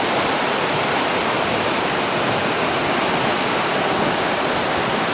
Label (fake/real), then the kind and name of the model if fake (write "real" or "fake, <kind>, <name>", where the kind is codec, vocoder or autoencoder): real